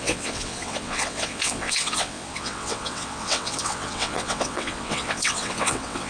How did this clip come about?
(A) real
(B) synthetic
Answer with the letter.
B